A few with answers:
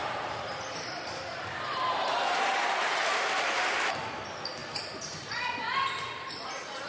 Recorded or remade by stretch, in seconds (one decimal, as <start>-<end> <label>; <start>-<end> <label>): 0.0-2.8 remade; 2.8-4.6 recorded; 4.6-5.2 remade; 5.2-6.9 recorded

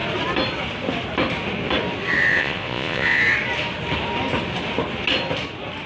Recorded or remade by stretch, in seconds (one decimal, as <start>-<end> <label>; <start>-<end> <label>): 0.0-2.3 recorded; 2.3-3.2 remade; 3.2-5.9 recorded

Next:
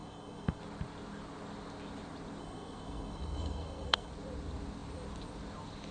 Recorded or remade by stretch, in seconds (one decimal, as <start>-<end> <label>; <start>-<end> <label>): 0.0-0.6 remade; 0.6-2.4 recorded; 2.4-4.1 remade; 4.1-5.9 recorded

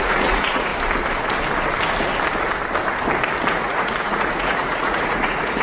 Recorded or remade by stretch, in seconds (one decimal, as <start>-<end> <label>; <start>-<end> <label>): 0.0-0.7 remade; 0.7-3.5 recorded; 3.5-5.6 remade